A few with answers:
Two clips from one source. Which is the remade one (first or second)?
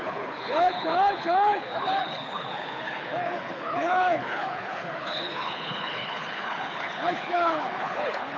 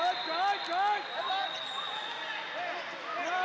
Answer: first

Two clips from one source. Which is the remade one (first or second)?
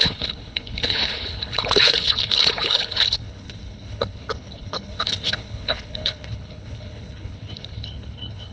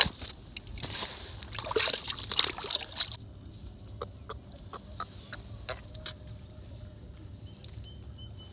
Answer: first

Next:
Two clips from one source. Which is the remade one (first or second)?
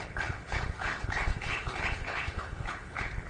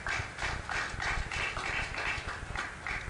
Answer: first